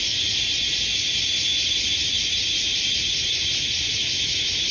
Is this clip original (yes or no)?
yes